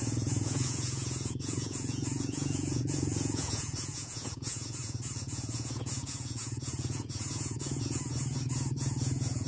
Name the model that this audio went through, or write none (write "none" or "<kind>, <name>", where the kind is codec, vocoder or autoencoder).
vocoder, Vocos